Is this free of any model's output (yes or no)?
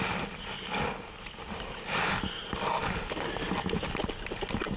yes